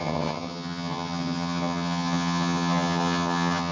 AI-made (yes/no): yes